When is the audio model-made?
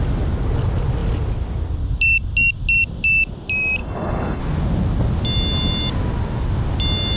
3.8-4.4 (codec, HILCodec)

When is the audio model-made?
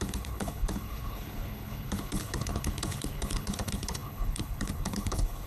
0.0-5.5 (codec, HILCodec)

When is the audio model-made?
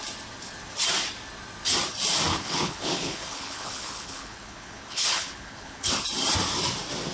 2.3-5.9 (codec, HILCodec)